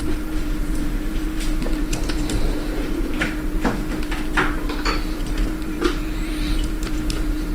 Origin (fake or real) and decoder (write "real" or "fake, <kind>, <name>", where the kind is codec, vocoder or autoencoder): fake, vocoder, BigVGAN v2